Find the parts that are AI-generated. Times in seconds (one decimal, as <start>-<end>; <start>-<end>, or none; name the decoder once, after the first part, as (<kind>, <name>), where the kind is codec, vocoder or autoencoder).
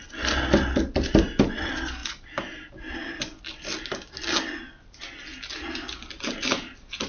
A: none